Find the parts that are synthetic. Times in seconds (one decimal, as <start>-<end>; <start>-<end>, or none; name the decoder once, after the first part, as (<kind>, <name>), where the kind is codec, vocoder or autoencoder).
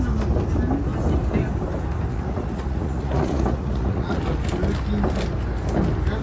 2.1-4.2 (vocoder, Vocos)